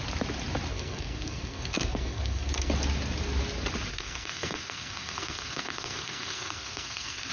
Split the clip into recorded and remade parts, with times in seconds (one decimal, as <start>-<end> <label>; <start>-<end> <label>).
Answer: 0.0-0.7 recorded; 0.7-2.7 remade; 2.7-3.9 recorded; 3.9-7.3 remade